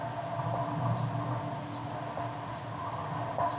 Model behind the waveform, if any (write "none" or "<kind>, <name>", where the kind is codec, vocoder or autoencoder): none